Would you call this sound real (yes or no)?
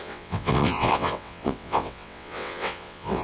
no